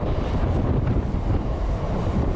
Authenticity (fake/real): real